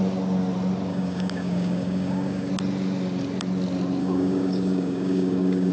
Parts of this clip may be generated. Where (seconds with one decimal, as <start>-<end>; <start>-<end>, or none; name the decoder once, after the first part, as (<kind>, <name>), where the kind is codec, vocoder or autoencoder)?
0.9-2.5 (codec, DAC); 4.0-5.7